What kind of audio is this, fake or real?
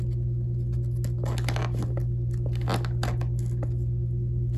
real